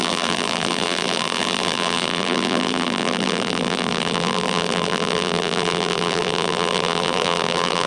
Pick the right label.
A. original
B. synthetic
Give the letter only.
B